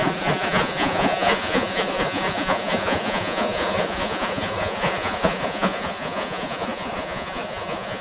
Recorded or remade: remade